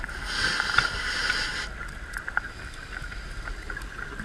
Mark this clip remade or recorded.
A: recorded